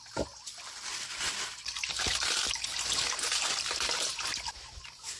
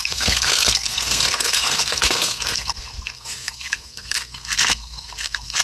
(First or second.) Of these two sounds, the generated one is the second